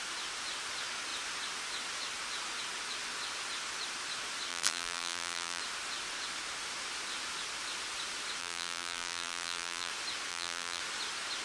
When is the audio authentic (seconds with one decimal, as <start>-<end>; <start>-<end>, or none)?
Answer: 0.0-4.5; 5.6-8.4; 9.9-10.3; 10.8-11.4